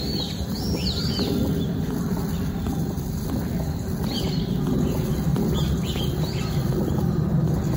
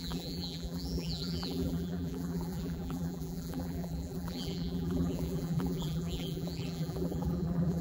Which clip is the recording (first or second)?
first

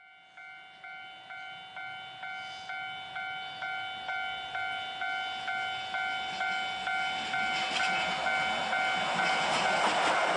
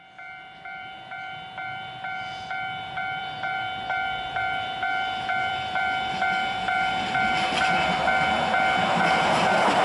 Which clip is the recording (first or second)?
first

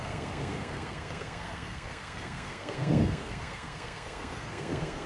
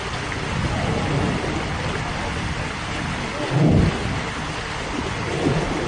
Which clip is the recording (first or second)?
second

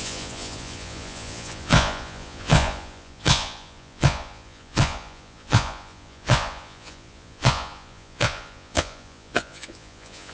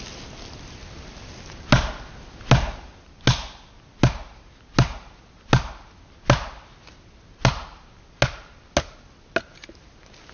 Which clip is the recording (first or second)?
second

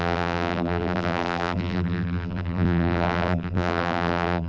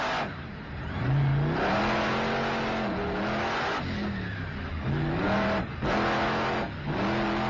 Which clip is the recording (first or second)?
second